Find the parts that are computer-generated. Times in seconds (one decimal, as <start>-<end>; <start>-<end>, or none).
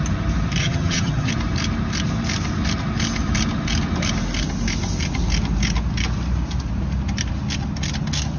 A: 0.6-1.3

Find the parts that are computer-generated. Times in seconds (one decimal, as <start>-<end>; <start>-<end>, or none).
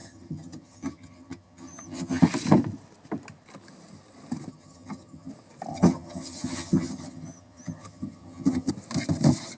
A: 0.0-2.2; 4.5-5.3; 5.7-8.7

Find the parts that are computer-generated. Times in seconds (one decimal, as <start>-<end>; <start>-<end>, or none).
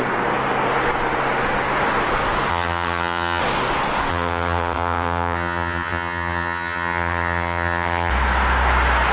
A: 2.5-3.4; 4.1-8.1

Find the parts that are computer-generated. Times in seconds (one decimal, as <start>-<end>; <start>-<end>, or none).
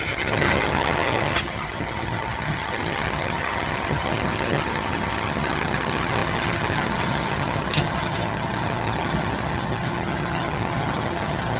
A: 0.0-11.6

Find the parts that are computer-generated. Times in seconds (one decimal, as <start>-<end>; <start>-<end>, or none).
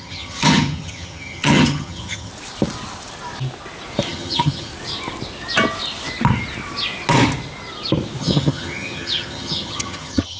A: 0.0-2.3; 4.1-4.7; 8.2-10.4